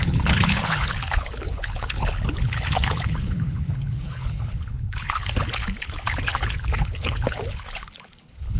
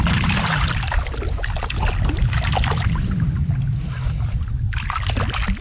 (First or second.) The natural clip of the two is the second